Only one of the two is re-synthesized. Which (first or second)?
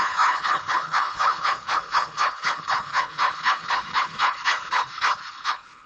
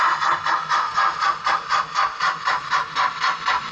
first